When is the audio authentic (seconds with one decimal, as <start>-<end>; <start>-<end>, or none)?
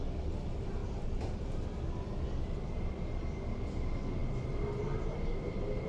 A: 0.0-5.9